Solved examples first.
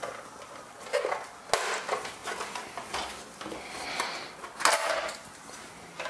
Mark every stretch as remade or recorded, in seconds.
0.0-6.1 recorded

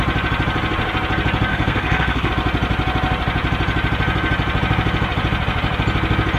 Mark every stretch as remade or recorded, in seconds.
0.0-1.5 recorded; 1.5-2.3 remade; 2.3-6.4 recorded